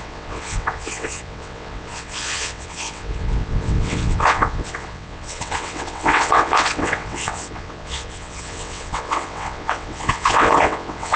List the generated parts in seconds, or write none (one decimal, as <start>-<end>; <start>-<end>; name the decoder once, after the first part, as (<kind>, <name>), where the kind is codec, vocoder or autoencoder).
0.0-11.2 (vocoder, WaveNeXt)